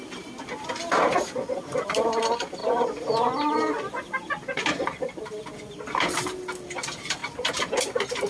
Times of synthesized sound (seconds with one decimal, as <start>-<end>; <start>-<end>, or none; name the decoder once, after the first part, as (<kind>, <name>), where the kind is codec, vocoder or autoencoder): none